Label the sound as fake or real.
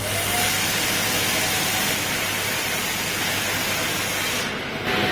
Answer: real